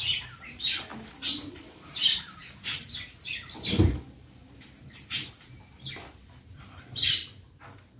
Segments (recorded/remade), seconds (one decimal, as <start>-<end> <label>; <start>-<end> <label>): 0.0-0.9 remade; 0.9-1.5 recorded; 1.5-8.0 remade